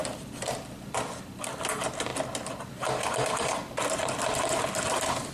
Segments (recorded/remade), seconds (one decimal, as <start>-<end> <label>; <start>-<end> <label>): 0.0-5.3 recorded